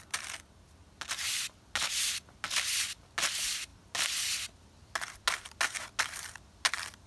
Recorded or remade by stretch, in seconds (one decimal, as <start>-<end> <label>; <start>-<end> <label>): 0.0-7.1 recorded